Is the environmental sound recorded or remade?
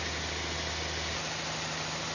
recorded